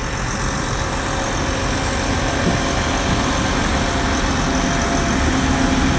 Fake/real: real